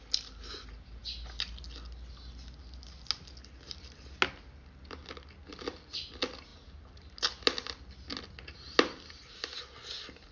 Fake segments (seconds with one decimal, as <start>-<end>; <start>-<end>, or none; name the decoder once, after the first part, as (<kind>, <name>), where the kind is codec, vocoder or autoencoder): none